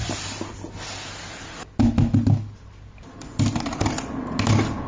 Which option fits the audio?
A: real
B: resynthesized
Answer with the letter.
A